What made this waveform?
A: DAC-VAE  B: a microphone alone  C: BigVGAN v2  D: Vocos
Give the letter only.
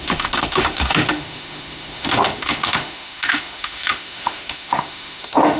A